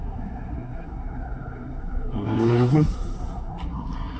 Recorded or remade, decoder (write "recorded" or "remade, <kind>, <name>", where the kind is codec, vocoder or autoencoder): remade, codec, SNAC